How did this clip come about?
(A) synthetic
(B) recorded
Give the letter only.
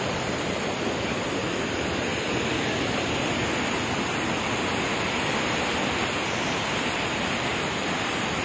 A